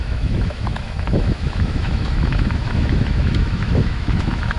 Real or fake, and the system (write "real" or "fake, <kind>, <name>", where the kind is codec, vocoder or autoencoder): fake, autoencoder, DAC-VAE